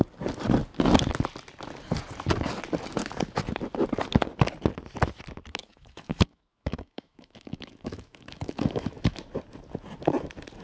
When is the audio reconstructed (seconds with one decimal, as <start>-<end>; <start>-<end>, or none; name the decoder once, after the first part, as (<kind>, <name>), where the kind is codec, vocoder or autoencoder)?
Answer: 5.6-9.2 (autoencoder, DAC-VAE)

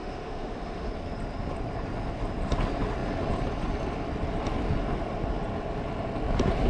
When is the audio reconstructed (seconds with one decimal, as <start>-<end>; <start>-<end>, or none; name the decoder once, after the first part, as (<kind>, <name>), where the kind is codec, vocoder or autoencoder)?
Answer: 0.0-0.9 (autoencoder, DAC-VAE)

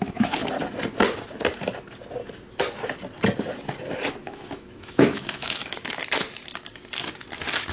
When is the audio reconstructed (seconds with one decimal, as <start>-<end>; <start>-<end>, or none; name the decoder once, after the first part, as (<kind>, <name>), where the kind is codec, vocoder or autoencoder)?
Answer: 0.0-0.4 (autoencoder, DAC-VAE); 4.2-6.0

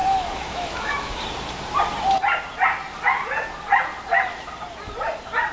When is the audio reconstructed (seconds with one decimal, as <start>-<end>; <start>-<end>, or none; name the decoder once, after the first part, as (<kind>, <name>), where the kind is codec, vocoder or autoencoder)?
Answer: 0.0-1.2 (autoencoder, DAC-VAE)

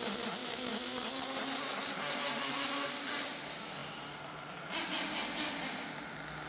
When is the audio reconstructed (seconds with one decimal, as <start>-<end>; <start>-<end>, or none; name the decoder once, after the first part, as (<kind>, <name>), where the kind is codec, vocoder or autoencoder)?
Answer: 0.4-1.0 (autoencoder, DAC-VAE)

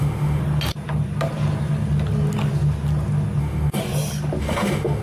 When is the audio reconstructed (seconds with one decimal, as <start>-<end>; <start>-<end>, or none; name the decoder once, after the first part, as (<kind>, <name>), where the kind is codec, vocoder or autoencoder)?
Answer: 0.0-0.4 (autoencoder, DAC-VAE); 3.4-3.8; 4.4-5.0

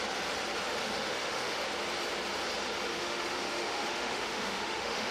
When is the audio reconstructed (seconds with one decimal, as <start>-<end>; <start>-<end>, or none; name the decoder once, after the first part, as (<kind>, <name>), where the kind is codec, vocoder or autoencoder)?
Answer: 0.8-1.6 (autoencoder, DAC-VAE); 2.9-5.1

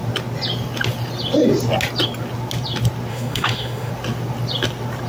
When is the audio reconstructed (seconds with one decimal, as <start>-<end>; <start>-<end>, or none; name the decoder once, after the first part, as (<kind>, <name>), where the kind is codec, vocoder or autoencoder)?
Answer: 3.1-3.9 (autoencoder, DAC-VAE)